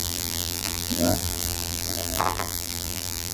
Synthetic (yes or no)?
yes